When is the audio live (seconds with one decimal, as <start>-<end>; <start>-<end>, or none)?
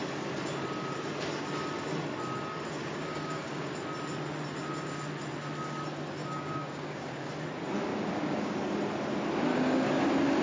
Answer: 0.0-2.8; 3.7-6.2; 7.3-7.9; 8.6-9.5; 10.0-10.4